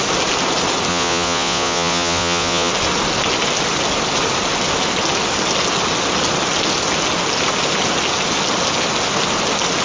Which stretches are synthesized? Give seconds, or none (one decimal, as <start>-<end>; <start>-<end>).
0.9-2.7